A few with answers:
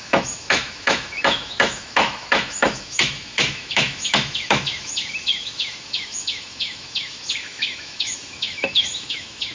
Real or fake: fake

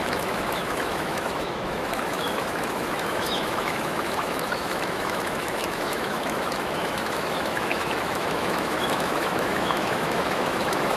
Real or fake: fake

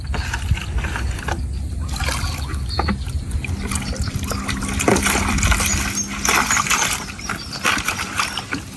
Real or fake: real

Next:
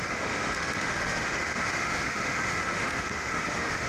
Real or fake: fake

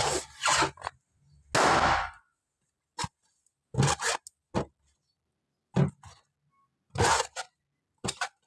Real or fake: real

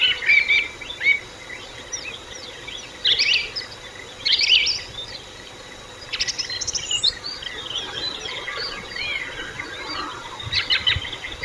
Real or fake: real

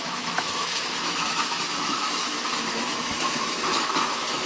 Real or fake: fake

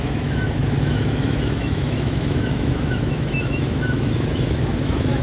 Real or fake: fake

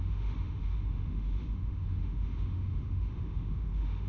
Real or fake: fake